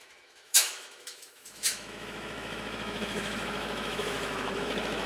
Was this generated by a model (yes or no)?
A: yes